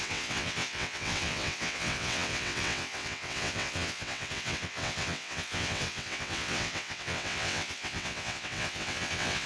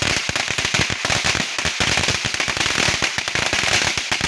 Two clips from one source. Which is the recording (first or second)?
second